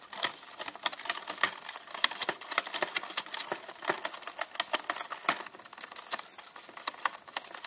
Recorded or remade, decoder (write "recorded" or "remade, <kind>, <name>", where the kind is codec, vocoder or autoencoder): recorded